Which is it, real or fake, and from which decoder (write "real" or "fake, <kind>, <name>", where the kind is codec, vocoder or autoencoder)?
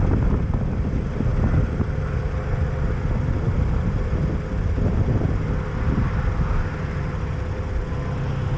real